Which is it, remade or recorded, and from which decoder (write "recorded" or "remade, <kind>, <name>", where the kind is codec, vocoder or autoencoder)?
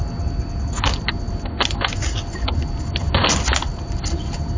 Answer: recorded